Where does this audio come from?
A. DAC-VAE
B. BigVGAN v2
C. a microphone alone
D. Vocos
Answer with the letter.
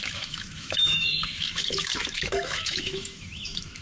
A